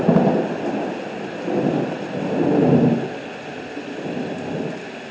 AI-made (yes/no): no